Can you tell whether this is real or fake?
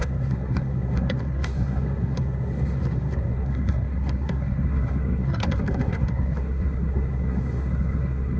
fake